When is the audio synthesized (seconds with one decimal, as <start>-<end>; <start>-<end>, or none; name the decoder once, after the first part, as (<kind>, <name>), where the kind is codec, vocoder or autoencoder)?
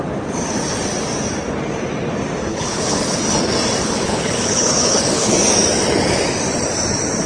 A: 2.5-3.2 (codec, HILCodec); 3.8-5.3